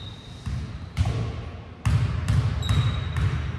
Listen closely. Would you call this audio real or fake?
real